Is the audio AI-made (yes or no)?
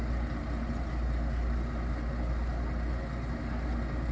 no